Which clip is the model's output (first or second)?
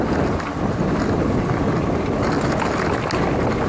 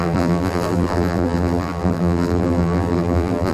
second